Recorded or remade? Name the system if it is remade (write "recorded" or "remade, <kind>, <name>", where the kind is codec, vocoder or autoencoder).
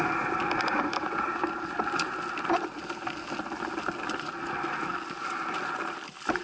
recorded